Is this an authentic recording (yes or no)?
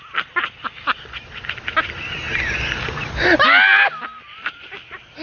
yes